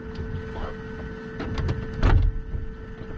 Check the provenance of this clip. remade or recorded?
recorded